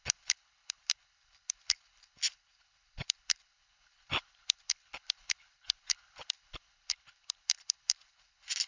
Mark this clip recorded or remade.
remade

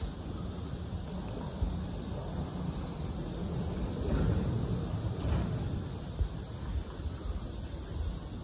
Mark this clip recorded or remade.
recorded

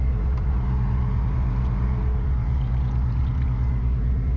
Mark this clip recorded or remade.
recorded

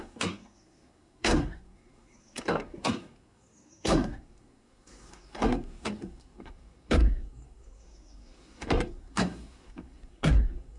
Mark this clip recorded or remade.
remade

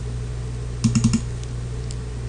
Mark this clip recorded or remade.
recorded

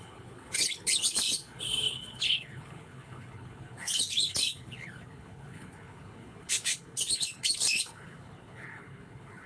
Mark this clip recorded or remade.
remade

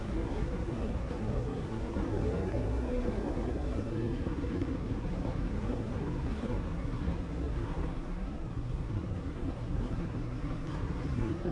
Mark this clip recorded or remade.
remade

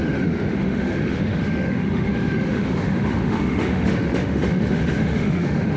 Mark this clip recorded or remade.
remade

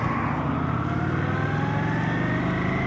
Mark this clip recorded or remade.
recorded